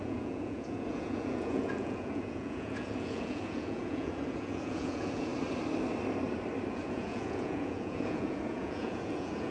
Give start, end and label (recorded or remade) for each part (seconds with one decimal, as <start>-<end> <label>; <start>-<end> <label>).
0.0-5.3 remade; 5.3-6.7 recorded; 6.7-9.5 remade